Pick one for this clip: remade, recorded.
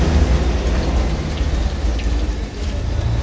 recorded